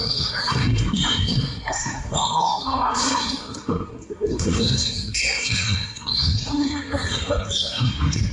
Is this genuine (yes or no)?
no